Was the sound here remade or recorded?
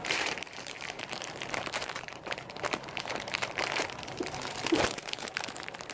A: remade